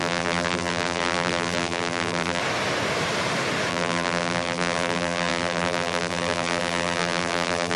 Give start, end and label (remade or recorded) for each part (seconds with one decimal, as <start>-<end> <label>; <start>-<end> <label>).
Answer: 0.0-2.4 remade; 2.4-3.7 recorded; 3.7-7.8 remade